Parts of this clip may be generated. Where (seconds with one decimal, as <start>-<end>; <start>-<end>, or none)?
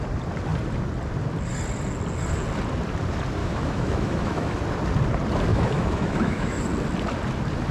3.4-4.6; 5.5-6.6